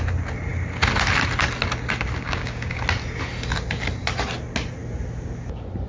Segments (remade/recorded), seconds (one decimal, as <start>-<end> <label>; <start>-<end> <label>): 0.0-2.2 recorded; 2.2-2.8 remade; 2.8-5.9 recorded